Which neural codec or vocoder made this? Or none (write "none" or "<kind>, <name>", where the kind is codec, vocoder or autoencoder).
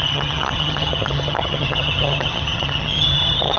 vocoder, HiFi-GAN